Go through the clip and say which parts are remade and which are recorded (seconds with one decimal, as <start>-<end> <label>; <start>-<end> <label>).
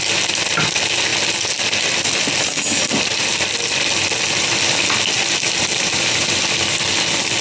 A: 0.0-7.4 recorded